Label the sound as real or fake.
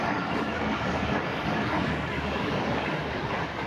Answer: fake